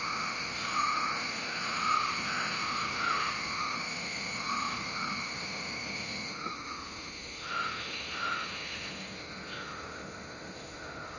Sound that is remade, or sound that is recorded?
remade